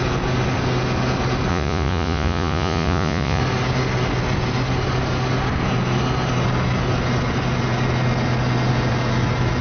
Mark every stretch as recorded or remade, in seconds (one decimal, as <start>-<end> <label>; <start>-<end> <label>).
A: 0.0-1.5 recorded; 1.5-3.4 remade; 3.4-9.6 recorded